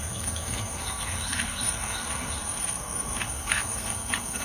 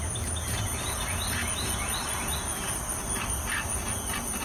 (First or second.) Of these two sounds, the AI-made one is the first